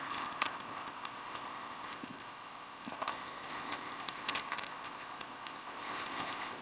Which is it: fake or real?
fake